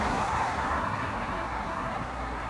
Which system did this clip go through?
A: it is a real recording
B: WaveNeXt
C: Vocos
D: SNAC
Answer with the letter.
D